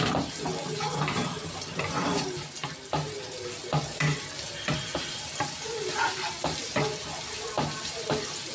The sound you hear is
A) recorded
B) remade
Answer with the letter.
A